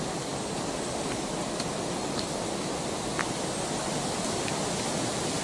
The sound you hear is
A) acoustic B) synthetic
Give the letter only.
A